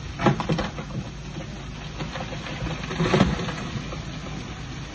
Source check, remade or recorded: recorded